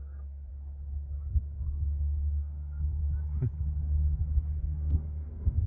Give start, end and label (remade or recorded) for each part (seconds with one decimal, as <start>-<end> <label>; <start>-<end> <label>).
0.0-0.5 remade; 0.5-1.3 recorded; 1.3-3.0 remade; 3.0-4.6 recorded; 4.6-5.7 remade